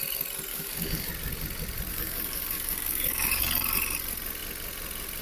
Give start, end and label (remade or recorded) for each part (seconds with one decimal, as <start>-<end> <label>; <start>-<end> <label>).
0.0-0.5 recorded; 0.5-1.1 remade; 1.1-1.9 recorded; 1.9-3.4 remade; 3.4-5.2 recorded

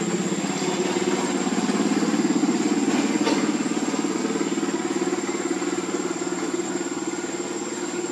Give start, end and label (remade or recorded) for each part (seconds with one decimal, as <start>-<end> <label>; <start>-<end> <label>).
0.0-2.4 recorded; 2.4-4.2 remade; 4.2-8.1 recorded